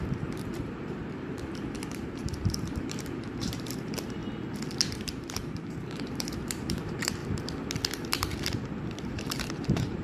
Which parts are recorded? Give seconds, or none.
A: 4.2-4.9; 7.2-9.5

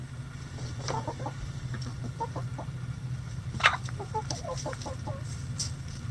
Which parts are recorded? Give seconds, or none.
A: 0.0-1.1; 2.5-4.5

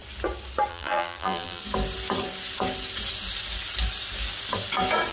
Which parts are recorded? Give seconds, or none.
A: 0.0-0.7; 1.6-5.1

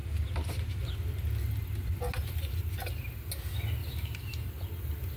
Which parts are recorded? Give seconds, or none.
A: 0.0-3.8; 4.5-5.2

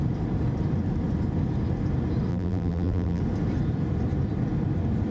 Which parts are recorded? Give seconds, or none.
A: 0.0-2.3; 3.2-5.1

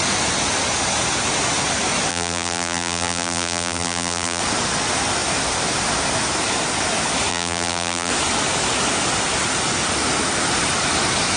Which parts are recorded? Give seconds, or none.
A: 0.0-2.1; 4.4-7.3; 8.1-11.4